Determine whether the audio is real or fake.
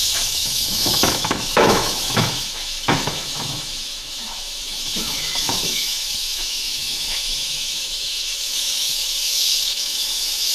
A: fake